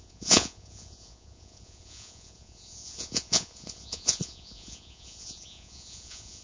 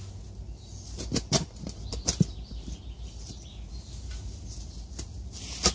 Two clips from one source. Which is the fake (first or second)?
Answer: first